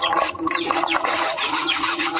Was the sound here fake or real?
fake